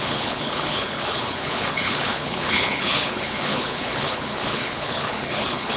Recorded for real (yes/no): no